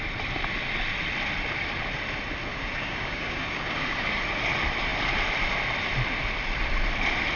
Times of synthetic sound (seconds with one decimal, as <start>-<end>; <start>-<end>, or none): 2.5-4.2